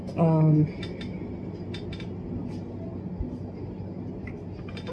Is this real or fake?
real